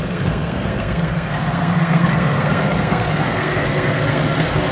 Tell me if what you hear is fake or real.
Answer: fake